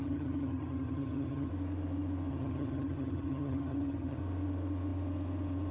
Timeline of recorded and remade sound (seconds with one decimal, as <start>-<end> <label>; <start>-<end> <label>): 0.0-1.5 remade; 1.5-2.3 recorded; 2.3-4.2 remade; 4.2-5.7 recorded